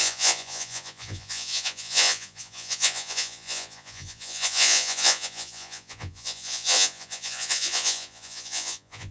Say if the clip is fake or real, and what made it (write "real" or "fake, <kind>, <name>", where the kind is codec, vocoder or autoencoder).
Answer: fake, vocoder, Vocos